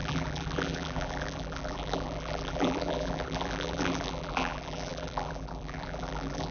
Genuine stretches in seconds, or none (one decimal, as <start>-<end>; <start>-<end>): none